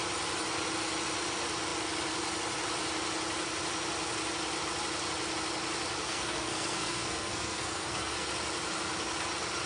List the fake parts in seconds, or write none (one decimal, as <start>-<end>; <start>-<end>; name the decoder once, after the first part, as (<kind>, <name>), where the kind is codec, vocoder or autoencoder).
6.0-8.3 (codec, SNAC)